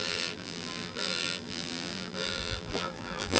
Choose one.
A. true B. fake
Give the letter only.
B